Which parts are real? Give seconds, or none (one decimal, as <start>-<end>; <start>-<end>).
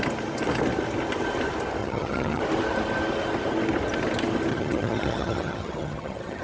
0.0-1.8; 2.4-4.5